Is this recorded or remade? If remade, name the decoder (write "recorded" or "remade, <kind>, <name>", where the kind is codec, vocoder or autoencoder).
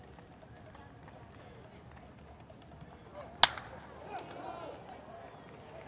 recorded